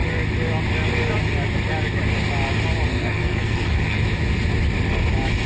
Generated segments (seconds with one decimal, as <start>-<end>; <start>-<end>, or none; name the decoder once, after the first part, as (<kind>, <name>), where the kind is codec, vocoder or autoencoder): 2.9-4.0 (codec, SNAC)